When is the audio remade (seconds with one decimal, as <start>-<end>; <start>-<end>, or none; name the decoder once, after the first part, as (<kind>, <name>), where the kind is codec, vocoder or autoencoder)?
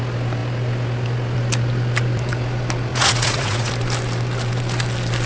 2.9-3.7 (vocoder, Vocos)